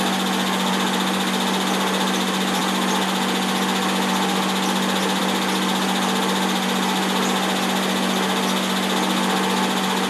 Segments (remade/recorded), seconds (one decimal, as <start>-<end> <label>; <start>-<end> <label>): 0.0-10.1 recorded